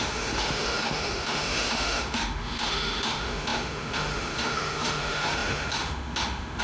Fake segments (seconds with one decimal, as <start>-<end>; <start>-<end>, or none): 0.0-6.6